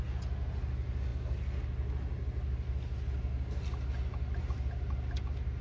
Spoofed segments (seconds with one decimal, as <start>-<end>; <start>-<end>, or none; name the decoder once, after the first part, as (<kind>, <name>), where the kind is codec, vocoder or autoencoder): none